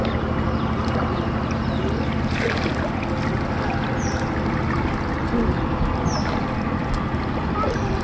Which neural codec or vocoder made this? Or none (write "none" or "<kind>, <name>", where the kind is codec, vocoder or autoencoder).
none